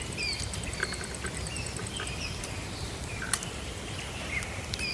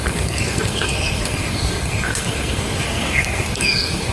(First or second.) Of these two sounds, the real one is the first